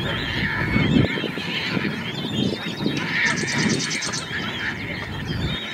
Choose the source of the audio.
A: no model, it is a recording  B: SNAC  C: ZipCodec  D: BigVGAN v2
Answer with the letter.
A